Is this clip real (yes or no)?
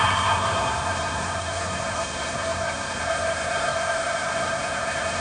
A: no